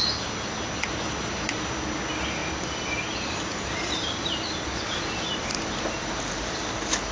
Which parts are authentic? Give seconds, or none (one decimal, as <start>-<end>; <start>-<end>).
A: 0.0-7.1